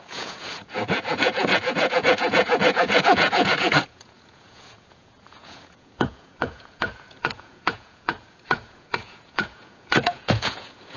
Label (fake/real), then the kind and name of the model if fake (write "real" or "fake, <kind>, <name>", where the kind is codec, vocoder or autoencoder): fake, vocoder, Vocos